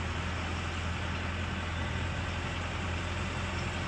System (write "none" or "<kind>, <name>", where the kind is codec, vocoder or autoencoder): none